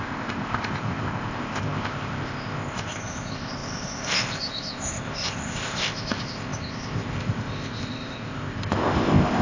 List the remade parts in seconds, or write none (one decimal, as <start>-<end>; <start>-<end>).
0.0-9.4

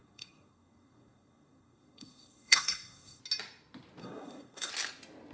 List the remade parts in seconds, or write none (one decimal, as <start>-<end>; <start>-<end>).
0.0-3.2; 4.0-4.7

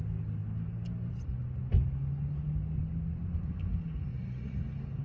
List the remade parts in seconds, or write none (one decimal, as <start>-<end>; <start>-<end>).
4.1-4.6

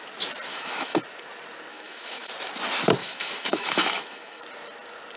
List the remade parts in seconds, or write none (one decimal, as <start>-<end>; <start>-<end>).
0.5-1.0; 1.7-2.3; 3.0-4.4

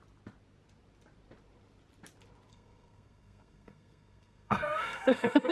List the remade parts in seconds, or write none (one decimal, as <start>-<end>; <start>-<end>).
2.5-5.5

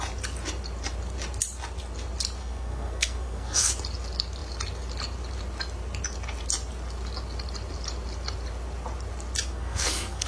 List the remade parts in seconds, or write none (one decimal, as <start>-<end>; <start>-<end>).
2.4-3.7; 9.5-10.3

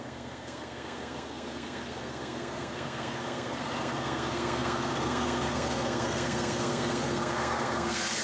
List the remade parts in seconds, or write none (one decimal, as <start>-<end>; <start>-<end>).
0.0-8.2